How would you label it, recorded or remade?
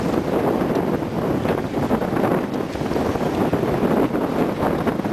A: recorded